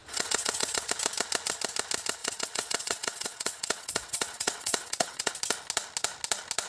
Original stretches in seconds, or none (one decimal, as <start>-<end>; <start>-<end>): 0.9-2.2; 5.3-6.7